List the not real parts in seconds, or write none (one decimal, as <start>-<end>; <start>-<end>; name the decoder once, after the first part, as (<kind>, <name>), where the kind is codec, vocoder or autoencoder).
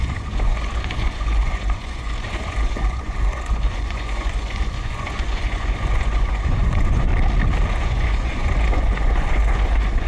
0.0-7.1 (vocoder, Vocos); 7.7-10.1